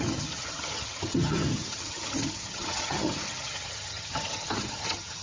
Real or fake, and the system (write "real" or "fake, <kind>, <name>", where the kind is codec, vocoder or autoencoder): fake, vocoder, HiFi-GAN